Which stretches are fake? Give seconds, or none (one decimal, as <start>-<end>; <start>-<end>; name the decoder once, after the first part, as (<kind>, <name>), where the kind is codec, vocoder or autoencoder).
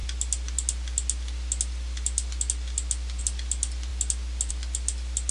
none